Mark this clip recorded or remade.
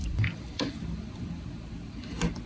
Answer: remade